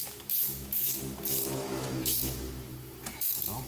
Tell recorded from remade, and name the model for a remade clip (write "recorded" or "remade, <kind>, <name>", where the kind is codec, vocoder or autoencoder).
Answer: remade, autoencoder, DAC-VAE